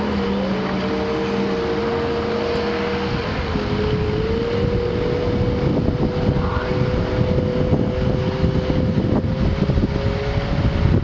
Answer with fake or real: real